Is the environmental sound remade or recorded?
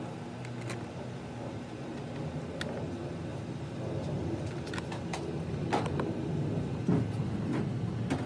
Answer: recorded